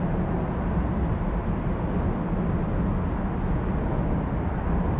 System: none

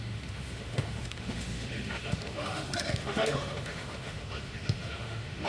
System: autoencoder, DAC-VAE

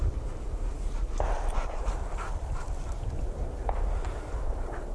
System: none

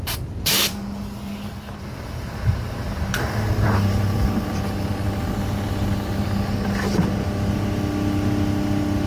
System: none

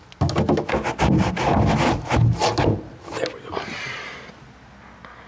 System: none